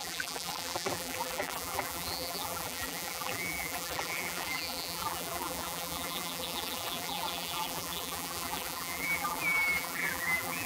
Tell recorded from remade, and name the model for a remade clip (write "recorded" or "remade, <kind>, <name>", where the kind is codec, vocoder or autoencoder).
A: remade, vocoder, BigVGAN v2